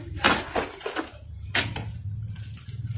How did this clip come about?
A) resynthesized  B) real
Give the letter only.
B